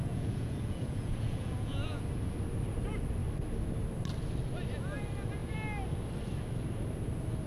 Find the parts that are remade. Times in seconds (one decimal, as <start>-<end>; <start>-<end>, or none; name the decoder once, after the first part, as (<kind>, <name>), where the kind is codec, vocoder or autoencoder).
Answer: 0.0-2.0 (vocoder, Vocos)